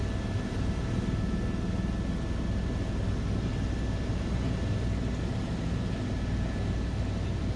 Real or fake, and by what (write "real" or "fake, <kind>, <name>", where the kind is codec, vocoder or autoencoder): real